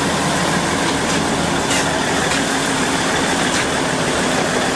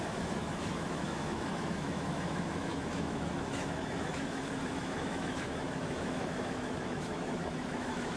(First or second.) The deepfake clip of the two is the second